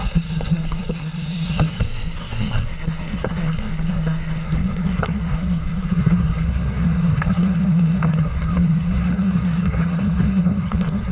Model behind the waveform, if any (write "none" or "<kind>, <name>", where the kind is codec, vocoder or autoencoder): codec, SNAC